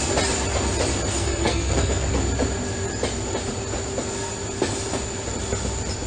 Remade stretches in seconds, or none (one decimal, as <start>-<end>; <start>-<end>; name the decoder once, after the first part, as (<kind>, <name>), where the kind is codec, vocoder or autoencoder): 1.1-2.1 (codec, SNAC)